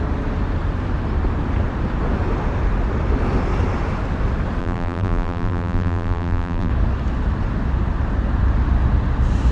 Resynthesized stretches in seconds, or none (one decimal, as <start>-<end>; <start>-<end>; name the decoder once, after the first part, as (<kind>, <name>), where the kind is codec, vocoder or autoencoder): 4.6-6.7 (vocoder, BigVGAN v2)